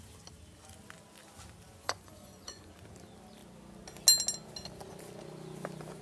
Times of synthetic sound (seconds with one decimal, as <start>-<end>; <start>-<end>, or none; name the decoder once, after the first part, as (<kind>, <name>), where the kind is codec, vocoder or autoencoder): 1.7-2.7 (vocoder, Vocos)